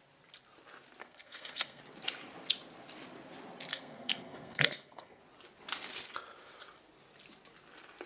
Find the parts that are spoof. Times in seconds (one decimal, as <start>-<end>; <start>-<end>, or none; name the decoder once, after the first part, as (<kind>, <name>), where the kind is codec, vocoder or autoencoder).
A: 1.0-1.8 (codec, SNAC); 3.7-5.2